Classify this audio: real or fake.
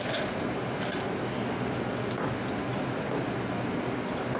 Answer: real